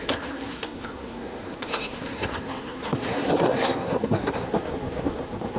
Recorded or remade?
remade